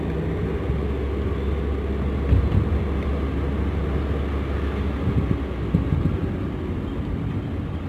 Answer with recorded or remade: recorded